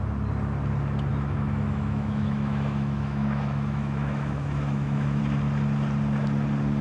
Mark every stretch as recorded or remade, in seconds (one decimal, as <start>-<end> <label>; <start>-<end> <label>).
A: 0.0-1.1 recorded; 1.1-5.2 remade; 5.2-6.8 recorded